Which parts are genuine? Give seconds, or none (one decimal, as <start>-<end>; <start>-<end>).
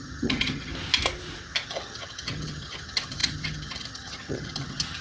0.7-1.6